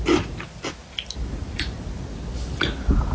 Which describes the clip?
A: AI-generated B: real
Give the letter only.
B